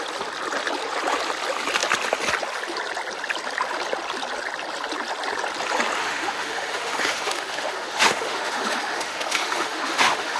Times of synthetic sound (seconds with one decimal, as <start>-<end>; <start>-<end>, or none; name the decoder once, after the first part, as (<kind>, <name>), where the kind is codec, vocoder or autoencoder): 6.0-10.4 (autoencoder, DAC-VAE)